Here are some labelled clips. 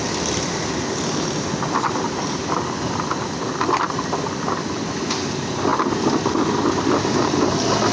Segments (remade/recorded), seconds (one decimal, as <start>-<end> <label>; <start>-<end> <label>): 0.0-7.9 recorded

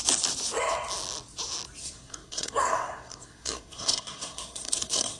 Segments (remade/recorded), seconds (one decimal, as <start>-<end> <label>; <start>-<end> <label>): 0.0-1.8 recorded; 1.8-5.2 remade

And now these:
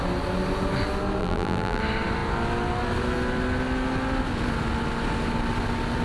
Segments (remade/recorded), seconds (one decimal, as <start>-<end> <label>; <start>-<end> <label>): 0.0-1.2 recorded; 1.2-1.8 remade; 1.8-6.0 recorded